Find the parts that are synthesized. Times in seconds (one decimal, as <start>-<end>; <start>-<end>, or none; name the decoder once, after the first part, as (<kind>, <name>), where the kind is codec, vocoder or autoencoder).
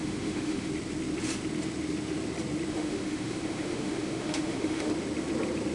0.0-0.7 (autoencoder, DAC-VAE); 2.7-4.9